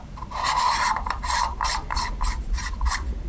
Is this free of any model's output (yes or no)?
no